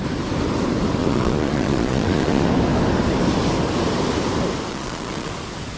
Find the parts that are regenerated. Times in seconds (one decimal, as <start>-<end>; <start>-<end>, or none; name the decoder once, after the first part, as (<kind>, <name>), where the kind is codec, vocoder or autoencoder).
1.0-2.5 (vocoder, Vocos); 4.7-5.3